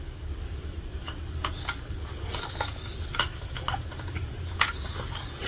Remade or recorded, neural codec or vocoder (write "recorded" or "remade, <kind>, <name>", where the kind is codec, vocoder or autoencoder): remade, codec, DAC